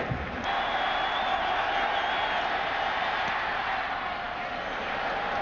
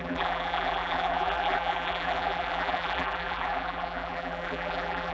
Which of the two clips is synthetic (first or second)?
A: second